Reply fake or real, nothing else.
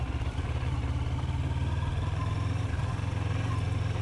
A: real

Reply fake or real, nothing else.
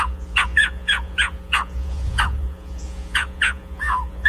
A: fake